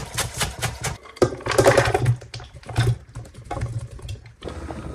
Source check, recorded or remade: recorded